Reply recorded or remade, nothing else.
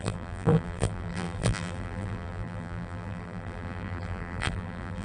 remade